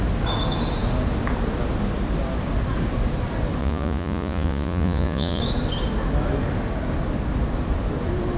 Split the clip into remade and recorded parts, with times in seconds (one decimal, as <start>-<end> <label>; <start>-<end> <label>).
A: 0.0-3.6 recorded; 3.6-5.4 remade; 5.4-8.4 recorded

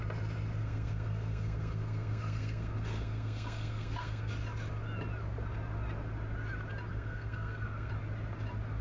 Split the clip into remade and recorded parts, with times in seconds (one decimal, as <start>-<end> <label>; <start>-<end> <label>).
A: 0.0-0.6 recorded; 0.6-4.3 remade; 4.3-6.9 recorded; 6.9-7.9 remade; 7.9-8.8 recorded

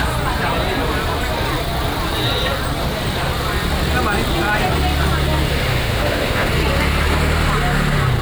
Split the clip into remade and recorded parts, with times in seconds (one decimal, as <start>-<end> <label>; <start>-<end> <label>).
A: 0.0-5.7 recorded; 5.7-6.5 remade; 6.5-8.2 recorded

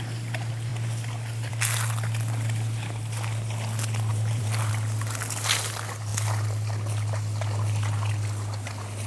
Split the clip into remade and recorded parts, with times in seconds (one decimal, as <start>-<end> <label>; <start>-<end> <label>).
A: 0.0-4.1 recorded; 4.1-4.7 remade; 4.7-9.1 recorded

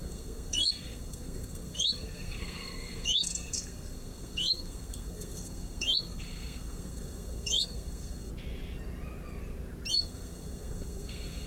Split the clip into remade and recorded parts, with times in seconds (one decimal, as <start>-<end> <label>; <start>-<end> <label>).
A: 0.0-8.3 remade; 8.3-9.9 recorded; 9.9-11.5 remade

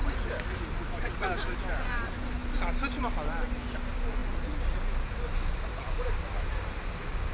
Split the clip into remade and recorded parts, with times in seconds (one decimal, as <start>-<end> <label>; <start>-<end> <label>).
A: 0.0-7.3 recorded

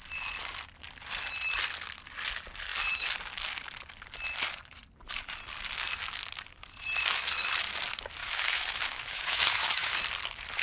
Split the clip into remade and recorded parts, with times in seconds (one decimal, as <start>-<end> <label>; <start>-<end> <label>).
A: 0.0-8.2 recorded; 8.2-10.0 remade; 10.0-10.6 recorded

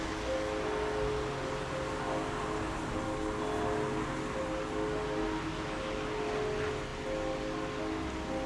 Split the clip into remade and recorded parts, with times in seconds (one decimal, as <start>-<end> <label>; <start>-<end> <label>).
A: 0.0-8.5 recorded